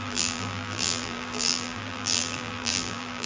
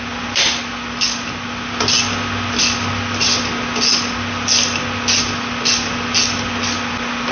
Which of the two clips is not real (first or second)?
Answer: first